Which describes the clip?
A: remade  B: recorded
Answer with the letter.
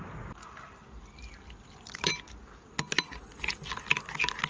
B